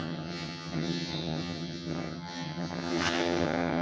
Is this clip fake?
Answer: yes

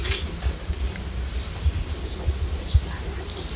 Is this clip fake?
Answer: no